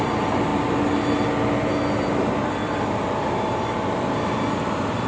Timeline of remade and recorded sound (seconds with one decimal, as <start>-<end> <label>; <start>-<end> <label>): 0.0-5.1 recorded

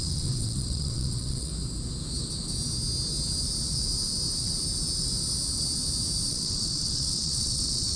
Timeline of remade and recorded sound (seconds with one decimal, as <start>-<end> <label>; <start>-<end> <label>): 0.0-1.5 remade; 1.5-6.3 recorded; 6.3-8.0 remade

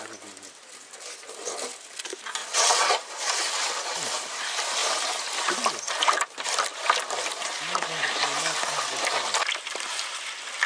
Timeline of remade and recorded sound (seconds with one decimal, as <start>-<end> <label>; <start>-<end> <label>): 0.0-2.4 recorded; 2.4-2.9 remade; 2.9-10.7 recorded

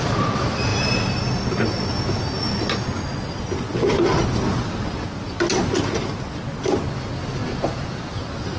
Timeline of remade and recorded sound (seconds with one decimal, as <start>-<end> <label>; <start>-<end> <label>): 0.0-8.6 recorded

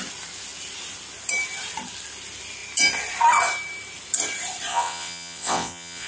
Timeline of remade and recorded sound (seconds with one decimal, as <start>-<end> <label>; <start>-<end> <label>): 0.0-4.7 recorded; 4.7-6.1 remade

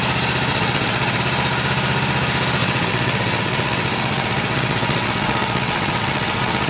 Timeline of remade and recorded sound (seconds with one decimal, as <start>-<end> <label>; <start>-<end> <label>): 0.0-0.5 recorded; 0.5-1.2 remade; 1.2-2.6 recorded; 2.6-6.7 remade

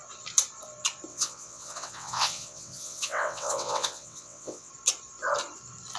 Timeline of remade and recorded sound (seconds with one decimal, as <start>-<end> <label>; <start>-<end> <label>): 0.0-1.1 recorded; 1.1-4.7 remade; 4.7-6.0 recorded

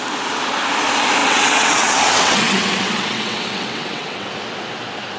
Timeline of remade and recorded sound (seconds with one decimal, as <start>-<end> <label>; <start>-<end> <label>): 0.0-1.2 recorded; 1.2-4.3 remade; 4.3-5.2 recorded